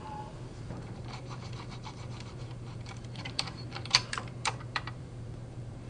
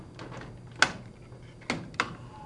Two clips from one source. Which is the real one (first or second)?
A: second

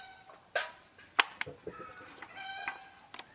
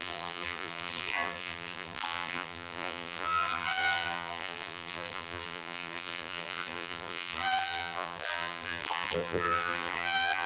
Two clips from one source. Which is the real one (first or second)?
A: first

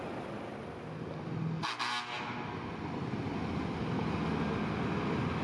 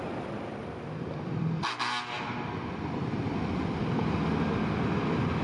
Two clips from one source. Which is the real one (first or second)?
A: first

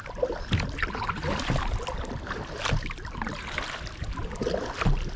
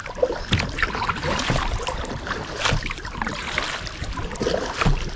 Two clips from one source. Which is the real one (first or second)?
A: first